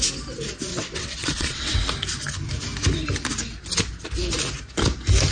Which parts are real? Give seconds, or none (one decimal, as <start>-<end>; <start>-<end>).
0.0-0.7; 1.8-5.3